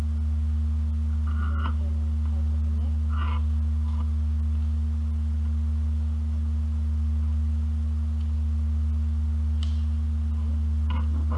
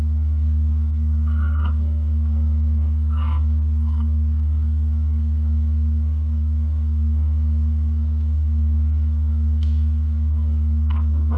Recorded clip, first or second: first